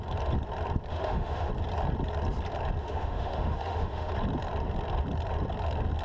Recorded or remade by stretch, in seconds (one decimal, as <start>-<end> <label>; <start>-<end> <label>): 0.0-0.9 recorded; 0.9-1.5 remade; 1.5-2.8 recorded; 2.8-4.1 remade; 4.1-6.0 recorded